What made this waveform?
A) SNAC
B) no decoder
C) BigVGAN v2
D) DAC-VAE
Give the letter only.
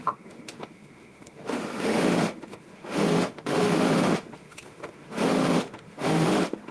D